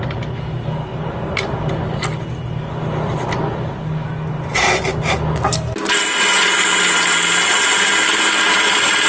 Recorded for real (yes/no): yes